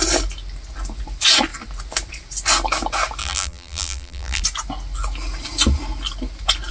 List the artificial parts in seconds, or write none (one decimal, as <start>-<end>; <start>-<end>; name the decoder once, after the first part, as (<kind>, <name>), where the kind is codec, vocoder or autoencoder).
3.2-4.4 (vocoder, BigVGAN v2)